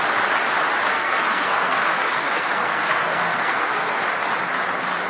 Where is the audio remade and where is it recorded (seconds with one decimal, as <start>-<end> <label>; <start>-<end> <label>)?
0.0-0.9 recorded; 0.9-4.0 remade; 4.0-5.1 recorded